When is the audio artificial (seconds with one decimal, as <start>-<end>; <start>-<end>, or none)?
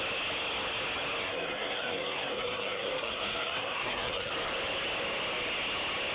1.2-4.3